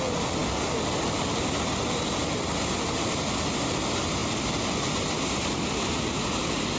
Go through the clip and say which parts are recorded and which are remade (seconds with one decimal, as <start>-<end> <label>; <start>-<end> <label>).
0.0-6.8 recorded